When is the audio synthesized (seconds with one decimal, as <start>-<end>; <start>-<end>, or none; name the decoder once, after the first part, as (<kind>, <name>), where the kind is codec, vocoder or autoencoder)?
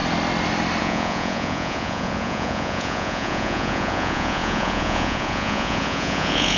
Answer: 0.8-6.6 (vocoder, Vocos)